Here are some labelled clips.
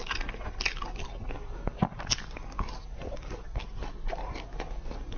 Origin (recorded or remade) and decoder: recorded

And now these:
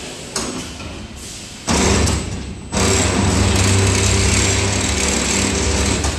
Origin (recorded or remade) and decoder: recorded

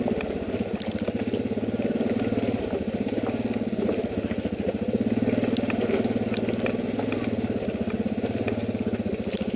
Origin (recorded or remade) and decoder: recorded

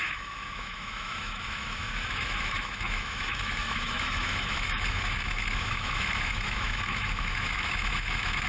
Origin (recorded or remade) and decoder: remade, autoencoder, DAC-VAE